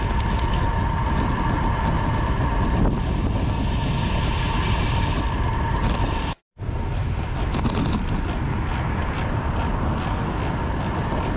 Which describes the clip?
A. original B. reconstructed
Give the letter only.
A